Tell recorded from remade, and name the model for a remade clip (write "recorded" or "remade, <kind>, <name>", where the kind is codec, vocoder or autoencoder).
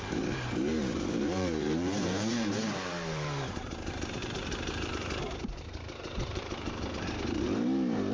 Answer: remade, vocoder, BigVGAN v2